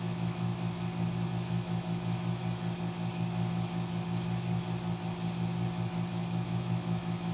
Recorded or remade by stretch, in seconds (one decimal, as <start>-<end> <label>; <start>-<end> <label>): 0.0-0.5 remade; 0.5-1.3 recorded; 1.3-2.4 remade; 2.4-6.1 recorded; 6.1-7.3 remade